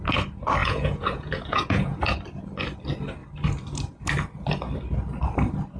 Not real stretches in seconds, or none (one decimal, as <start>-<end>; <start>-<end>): 0.6-2.0